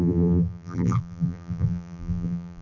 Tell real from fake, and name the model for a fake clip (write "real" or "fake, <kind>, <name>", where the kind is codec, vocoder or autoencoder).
fake, vocoder, BigVGAN v2